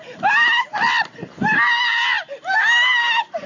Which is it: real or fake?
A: real